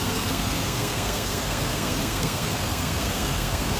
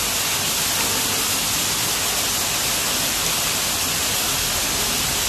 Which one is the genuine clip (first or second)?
second